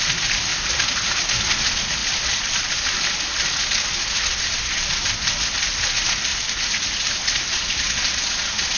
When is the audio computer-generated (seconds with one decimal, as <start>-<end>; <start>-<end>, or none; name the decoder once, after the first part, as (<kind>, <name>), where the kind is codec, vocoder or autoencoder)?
6.3-7.5 (vocoder, BigVGAN v2)